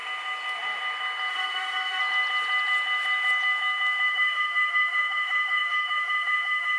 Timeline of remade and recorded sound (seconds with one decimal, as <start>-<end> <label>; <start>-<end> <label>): 0.0-1.3 recorded; 1.3-2.0 remade; 2.0-4.1 recorded; 4.1-6.8 remade